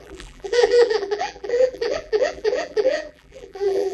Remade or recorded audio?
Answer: remade